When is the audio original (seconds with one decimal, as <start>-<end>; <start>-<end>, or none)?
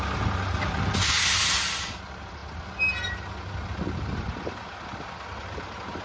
0.0-6.0